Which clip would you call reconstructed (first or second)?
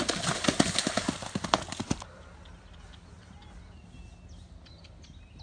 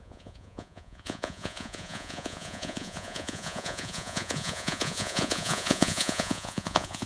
second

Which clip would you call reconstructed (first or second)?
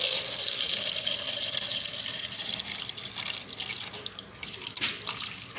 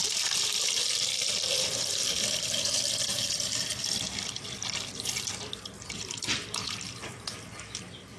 second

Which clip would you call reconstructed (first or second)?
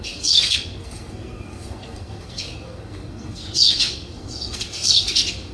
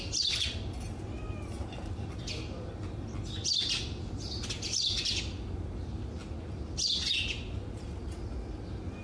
first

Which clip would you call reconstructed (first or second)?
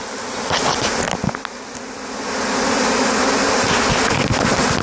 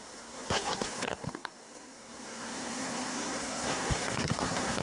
second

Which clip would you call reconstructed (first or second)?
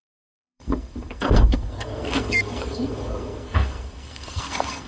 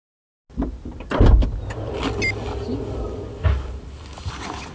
first